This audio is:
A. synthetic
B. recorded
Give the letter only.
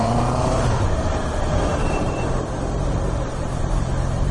A